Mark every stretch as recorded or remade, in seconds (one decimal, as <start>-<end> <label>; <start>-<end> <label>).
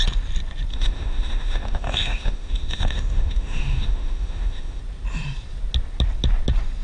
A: 0.0-0.7 recorded; 0.7-4.8 remade; 4.8-6.8 recorded